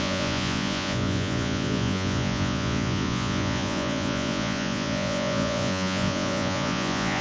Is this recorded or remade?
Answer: remade